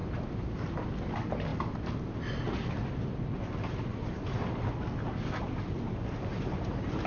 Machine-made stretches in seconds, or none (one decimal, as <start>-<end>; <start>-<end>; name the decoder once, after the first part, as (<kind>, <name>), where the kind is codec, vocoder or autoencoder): 0.0-0.7 (vocoder, BigVGAN v2); 6.3-7.1